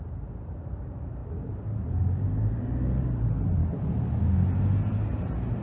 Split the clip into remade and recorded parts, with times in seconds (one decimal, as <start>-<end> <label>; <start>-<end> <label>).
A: 0.0-5.6 recorded